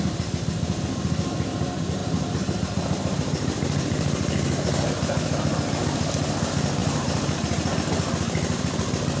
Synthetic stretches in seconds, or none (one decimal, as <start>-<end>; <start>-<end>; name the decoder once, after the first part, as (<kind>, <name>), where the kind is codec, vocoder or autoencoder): 2.0-4.9 (vocoder, BigVGAN v2); 6.8-7.7